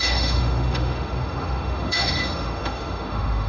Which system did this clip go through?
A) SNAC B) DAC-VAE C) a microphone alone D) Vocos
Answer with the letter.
B